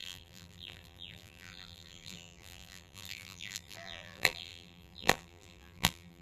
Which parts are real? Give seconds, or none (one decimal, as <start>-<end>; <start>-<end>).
none